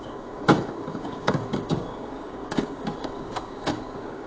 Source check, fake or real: fake